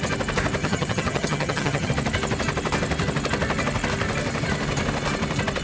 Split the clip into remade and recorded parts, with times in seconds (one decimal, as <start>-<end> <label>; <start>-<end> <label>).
0.0-0.6 recorded; 0.6-1.9 remade; 1.9-5.6 recorded